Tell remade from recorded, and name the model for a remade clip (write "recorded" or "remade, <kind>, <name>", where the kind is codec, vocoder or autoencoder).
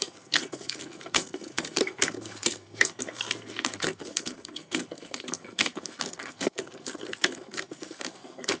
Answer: remade, codec, SNAC